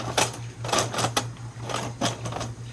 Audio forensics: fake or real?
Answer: real